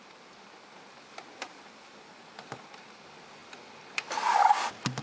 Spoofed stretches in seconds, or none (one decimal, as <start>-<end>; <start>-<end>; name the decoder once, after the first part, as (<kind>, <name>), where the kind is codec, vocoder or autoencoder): none